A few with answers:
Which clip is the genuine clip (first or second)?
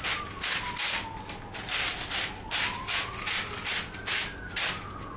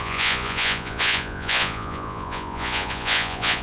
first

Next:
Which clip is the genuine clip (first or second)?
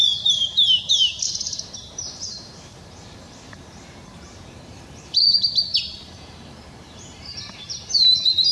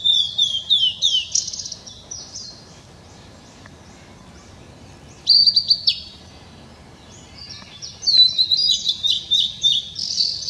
second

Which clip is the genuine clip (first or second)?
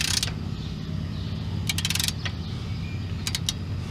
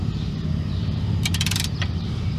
first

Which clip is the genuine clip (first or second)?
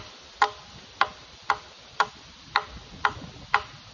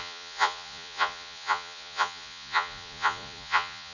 first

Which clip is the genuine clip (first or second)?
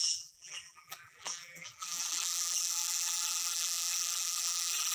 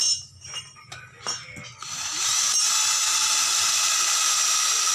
second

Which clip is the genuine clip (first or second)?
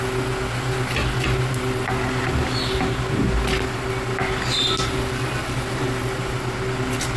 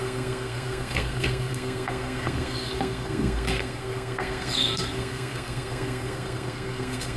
first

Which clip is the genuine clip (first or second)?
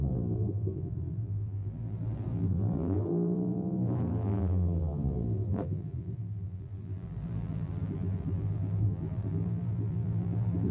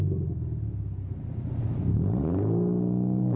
second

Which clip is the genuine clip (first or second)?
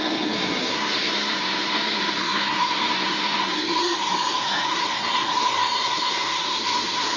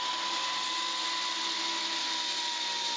second